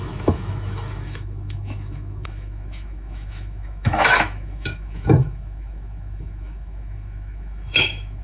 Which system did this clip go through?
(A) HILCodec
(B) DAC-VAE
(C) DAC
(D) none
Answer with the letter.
B